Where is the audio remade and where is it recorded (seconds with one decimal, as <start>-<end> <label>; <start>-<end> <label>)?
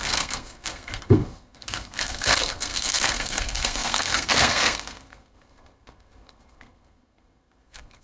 0.0-8.0 remade